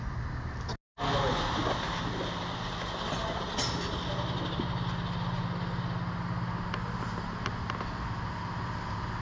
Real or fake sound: real